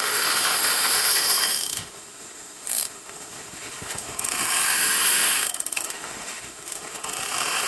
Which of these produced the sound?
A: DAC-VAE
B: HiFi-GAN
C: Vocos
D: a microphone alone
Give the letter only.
A